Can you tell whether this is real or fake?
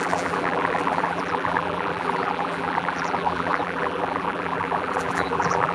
fake